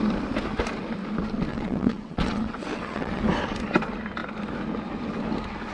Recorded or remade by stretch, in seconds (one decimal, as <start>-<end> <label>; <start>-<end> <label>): 0.0-1.5 recorded; 1.5-3.2 remade; 3.2-5.7 recorded